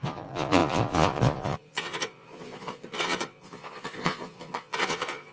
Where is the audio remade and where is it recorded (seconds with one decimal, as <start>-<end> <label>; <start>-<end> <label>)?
0.0-5.3 remade